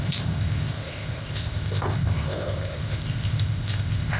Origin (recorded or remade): remade